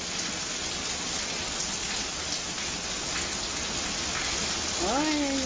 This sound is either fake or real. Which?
real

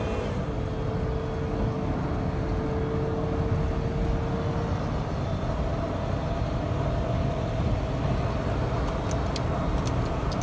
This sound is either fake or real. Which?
real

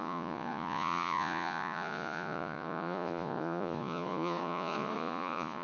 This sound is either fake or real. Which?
fake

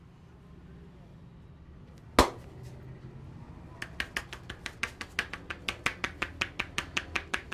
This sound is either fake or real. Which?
real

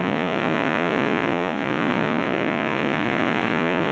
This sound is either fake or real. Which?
fake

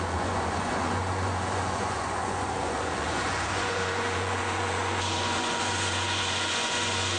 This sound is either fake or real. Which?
fake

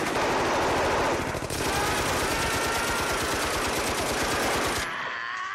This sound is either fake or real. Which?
real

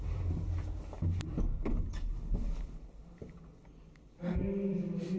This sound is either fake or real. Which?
real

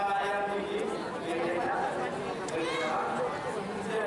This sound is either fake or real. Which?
real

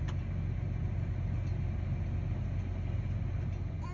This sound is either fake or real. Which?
real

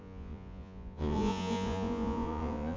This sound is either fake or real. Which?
fake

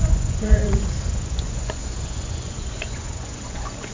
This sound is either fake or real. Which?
fake